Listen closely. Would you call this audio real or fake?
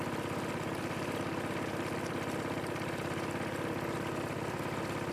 real